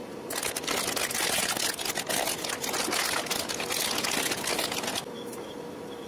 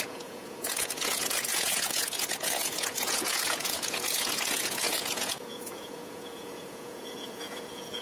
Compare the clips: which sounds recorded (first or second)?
first